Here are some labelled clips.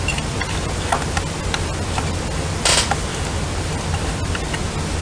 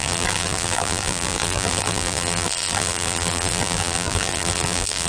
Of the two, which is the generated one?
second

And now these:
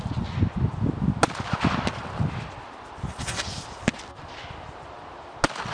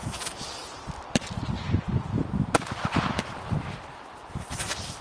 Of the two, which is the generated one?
second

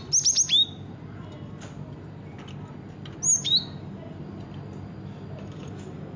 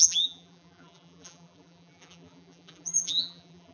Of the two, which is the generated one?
second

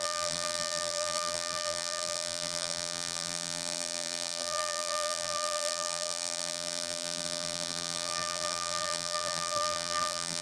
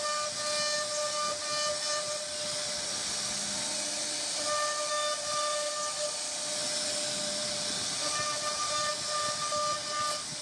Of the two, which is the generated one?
first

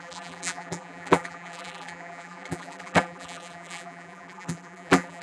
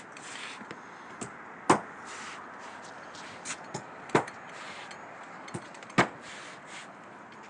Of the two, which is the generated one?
first